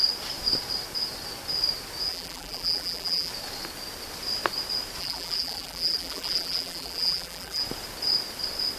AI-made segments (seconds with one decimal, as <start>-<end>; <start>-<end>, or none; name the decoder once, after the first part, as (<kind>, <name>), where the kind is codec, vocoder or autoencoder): 2.1-3.3 (vocoder, BigVGAN v2); 5.0-7.6